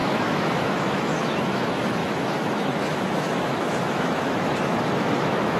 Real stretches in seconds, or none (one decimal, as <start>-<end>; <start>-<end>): none